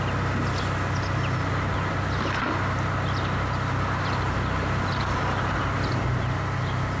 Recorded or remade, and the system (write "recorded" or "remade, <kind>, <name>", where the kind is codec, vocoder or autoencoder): recorded